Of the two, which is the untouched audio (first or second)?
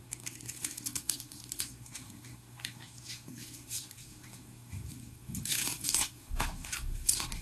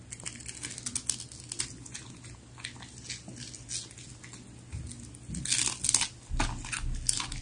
second